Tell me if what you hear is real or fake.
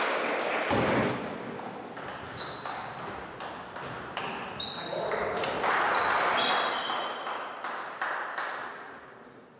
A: real